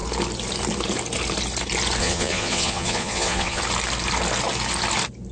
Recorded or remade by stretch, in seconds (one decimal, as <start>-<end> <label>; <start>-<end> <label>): 0.0-2.0 recorded; 2.0-3.6 remade; 3.6-5.3 recorded